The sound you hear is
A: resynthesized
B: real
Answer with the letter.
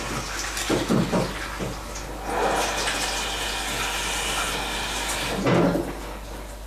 B